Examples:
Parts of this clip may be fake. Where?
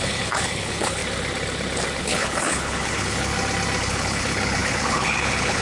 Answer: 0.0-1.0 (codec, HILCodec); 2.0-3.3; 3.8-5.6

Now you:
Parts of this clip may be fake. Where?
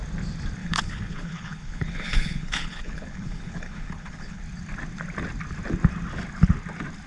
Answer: 0.6-4.4 (codec, HILCodec)